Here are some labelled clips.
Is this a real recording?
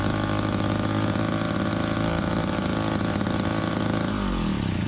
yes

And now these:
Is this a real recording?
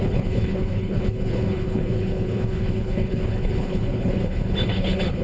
no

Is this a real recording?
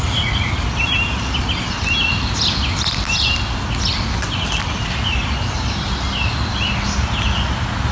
yes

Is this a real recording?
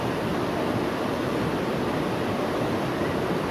yes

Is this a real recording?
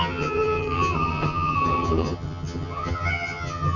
no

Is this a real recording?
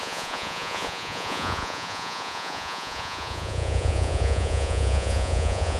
no